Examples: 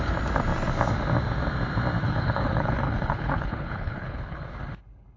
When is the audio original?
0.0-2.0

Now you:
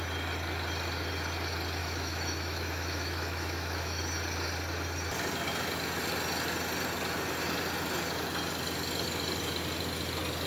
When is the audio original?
0.0-1.8; 4.0-10.5

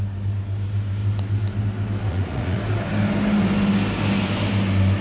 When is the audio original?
0.0-2.1; 2.6-5.0

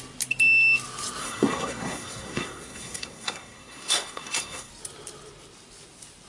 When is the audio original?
0.0-1.2; 4.7-6.3

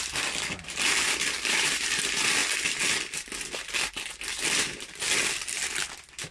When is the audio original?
0.0-6.3

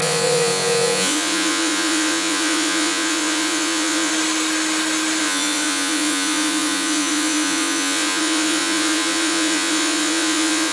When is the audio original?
4.1-5.2